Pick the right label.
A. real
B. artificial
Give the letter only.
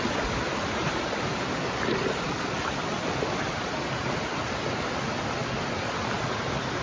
A